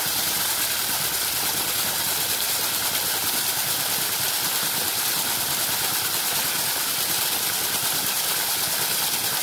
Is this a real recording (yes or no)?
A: no